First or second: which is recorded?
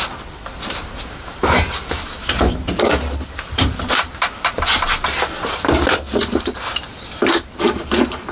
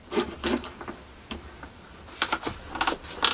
second